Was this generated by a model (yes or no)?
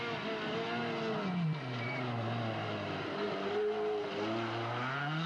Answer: no